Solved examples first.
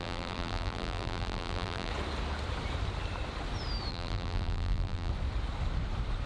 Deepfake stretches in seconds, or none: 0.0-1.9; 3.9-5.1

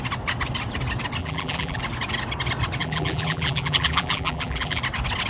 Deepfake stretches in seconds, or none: 1.2-1.8; 2.8-4.8

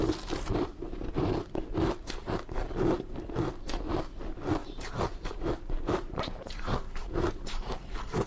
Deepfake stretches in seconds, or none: 0.0-1.0; 4.6-8.3

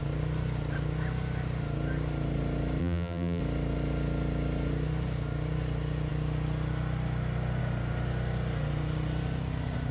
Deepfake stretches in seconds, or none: 2.8-3.4

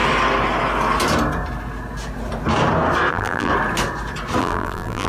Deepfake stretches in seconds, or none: 3.1-3.5; 4.4-5.1

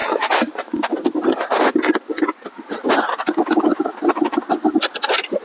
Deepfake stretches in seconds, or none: 0.0-1.1